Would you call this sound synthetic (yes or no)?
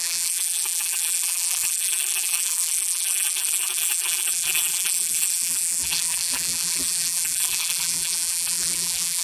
yes